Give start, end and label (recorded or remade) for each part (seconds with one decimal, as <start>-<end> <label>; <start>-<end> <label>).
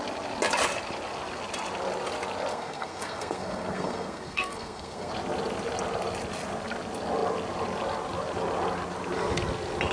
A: 0.0-2.5 recorded; 2.5-5.1 remade; 5.1-9.9 recorded